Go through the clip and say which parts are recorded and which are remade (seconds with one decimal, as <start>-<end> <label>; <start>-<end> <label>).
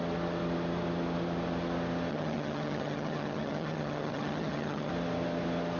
0.0-2.1 recorded; 2.1-4.9 remade; 4.9-5.8 recorded